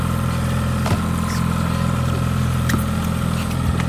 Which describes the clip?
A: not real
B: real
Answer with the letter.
B